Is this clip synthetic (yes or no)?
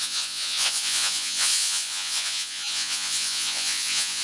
yes